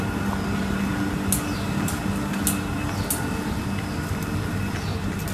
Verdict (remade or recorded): recorded